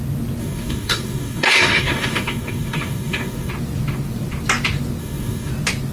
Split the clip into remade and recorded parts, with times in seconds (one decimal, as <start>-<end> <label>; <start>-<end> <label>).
0.0-0.4 recorded; 0.4-3.5 remade; 3.5-5.0 recorded; 5.0-5.5 remade; 5.5-5.9 recorded